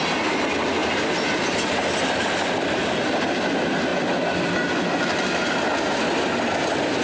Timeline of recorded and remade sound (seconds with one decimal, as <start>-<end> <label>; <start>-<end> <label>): 0.0-7.0 recorded